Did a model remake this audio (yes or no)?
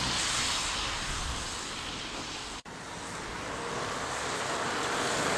no